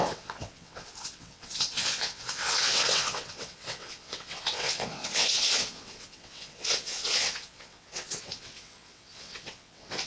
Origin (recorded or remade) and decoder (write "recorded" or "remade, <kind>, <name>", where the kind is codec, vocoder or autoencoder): remade, vocoder, WaveNeXt